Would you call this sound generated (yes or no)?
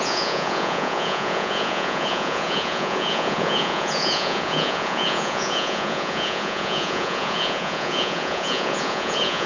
yes